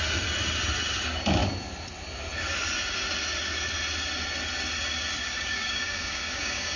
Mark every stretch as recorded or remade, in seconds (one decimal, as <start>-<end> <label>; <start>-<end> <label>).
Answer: 0.0-5.2 recorded; 5.2-6.8 remade